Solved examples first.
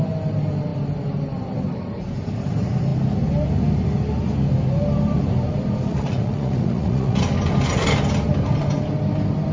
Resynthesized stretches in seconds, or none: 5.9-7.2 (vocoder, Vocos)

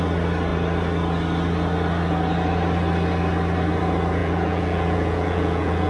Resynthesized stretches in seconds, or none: 4.2-5.9 (vocoder, Vocos)

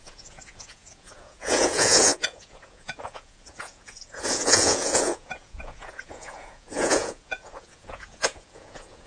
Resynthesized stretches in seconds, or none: 0.0-9.1 (vocoder, Vocos)

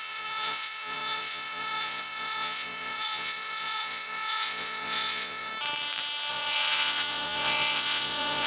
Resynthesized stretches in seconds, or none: 0.0-5.5 (vocoder, Vocos); 6.3-8.5

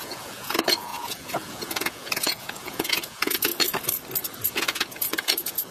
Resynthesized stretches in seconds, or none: 0.0-3.5 (vocoder, Vocos); 4.5-5.7

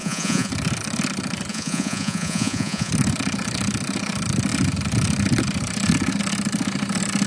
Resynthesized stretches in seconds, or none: 0.0-0.5 (vocoder, Vocos); 1.5-2.9

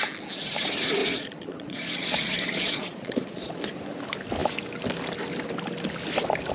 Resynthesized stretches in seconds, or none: 1.0-3.6 (vocoder, Vocos)

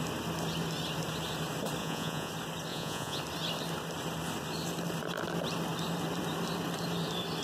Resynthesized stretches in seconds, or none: 1.8-2.3 (vocoder, Vocos); 2.7-3.2